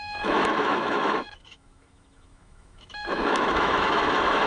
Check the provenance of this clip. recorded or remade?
remade